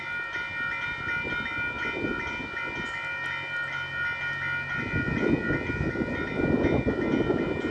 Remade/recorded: recorded